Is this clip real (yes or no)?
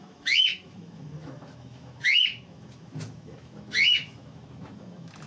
no